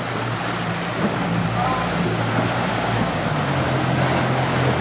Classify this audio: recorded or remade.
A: recorded